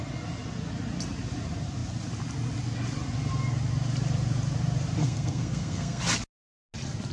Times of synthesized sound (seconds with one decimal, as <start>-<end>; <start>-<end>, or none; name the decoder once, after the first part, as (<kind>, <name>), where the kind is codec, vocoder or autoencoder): 5.0-6.0 (codec, SNAC)